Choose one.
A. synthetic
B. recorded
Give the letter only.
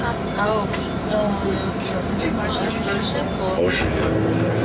B